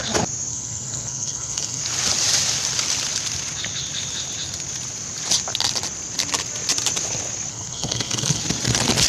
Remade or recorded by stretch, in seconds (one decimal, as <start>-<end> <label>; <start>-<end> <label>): 0.0-0.5 recorded; 0.5-1.8 remade; 1.8-7.5 recorded; 7.5-8.4 remade; 8.4-9.1 recorded